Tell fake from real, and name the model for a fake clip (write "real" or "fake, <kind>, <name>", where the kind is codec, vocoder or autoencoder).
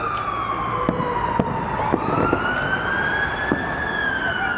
real